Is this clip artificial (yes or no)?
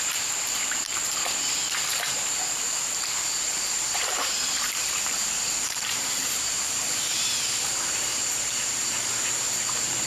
yes